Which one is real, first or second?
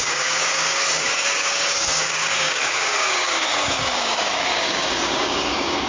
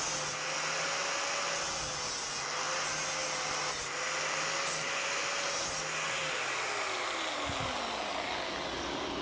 second